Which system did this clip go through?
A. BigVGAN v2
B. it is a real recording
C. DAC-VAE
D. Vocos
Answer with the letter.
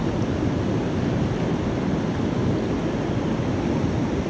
B